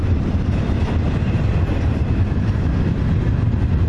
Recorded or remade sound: recorded